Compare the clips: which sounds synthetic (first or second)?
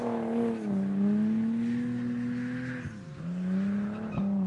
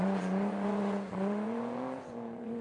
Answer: second